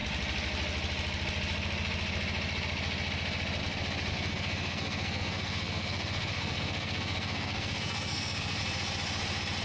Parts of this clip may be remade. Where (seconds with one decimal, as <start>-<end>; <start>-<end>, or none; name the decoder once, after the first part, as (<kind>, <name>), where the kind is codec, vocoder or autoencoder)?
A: 4.1-8.6 (codec, SNAC)